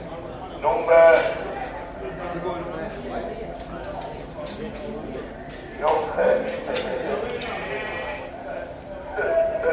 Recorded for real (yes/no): yes